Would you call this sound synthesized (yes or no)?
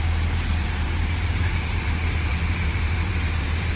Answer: yes